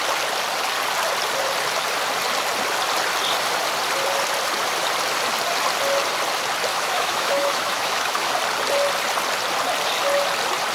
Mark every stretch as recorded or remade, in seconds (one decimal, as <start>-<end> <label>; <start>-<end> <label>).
0.0-6.7 recorded; 6.7-8.3 remade; 8.3-10.7 recorded